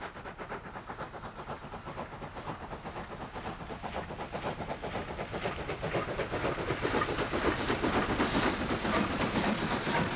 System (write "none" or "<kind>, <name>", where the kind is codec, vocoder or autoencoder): none